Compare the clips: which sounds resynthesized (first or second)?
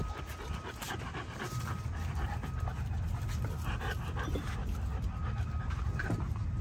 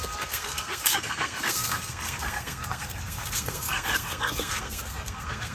second